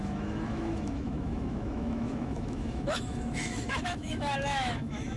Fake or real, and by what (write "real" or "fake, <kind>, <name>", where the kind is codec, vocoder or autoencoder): fake, autoencoder, DAC-VAE